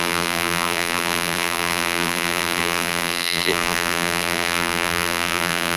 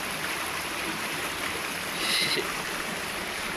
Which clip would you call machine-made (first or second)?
first